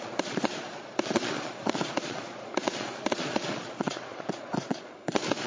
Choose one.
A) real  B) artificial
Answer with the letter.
B